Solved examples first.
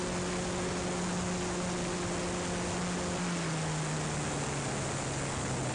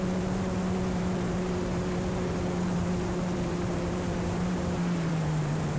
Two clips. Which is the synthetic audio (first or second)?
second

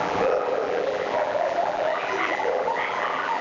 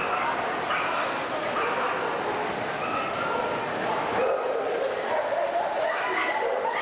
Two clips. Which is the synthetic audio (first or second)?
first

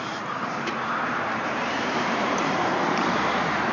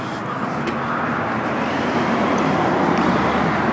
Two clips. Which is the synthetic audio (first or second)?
first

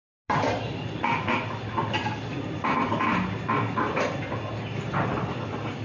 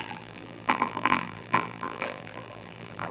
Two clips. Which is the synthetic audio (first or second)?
second